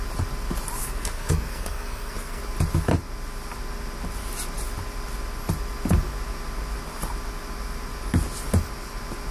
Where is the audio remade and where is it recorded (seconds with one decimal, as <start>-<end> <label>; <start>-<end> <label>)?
0.0-0.8 recorded; 0.8-2.4 remade; 2.4-9.3 recorded